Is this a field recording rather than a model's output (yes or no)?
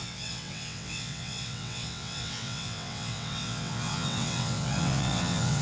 no